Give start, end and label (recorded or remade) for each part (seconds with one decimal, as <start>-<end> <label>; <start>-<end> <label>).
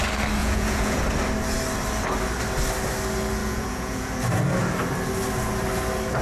0.0-0.4 recorded; 0.4-1.0 remade; 1.0-3.4 recorded; 3.4-4.2 remade; 4.2-6.2 recorded